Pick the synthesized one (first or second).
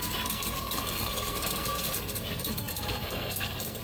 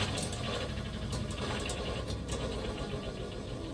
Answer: first